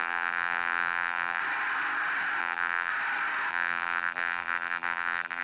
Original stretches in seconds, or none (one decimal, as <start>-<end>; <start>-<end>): 1.4-2.4; 2.9-3.5